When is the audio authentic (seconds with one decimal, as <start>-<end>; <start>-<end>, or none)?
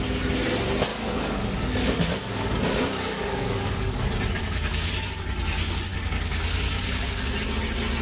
0.0-0.9; 4.0-4.4; 4.9-5.9; 7.2-8.0